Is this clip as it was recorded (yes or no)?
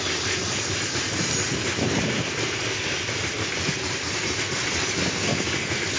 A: yes